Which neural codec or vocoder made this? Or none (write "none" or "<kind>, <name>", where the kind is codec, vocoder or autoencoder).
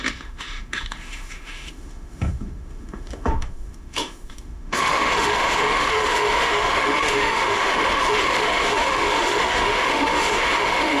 autoencoder, DAC-VAE